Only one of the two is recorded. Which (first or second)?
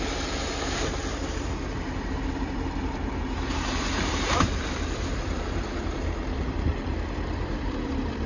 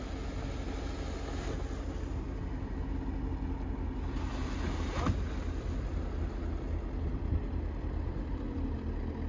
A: second